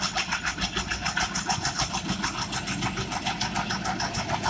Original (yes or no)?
yes